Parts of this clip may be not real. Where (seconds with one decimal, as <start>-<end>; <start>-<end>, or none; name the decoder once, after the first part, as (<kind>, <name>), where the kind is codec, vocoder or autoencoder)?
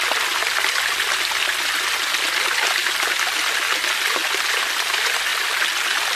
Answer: none